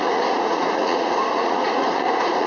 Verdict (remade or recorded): remade